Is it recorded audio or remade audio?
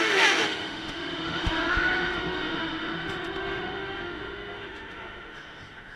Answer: remade